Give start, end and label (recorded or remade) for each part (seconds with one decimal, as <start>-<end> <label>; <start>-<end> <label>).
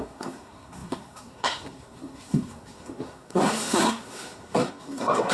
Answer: 0.0-5.3 remade